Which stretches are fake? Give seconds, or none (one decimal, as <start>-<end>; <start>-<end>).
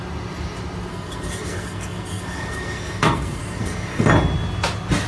0.9-4.0